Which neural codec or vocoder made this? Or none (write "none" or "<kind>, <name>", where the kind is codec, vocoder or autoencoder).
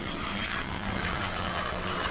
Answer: vocoder, WaveNeXt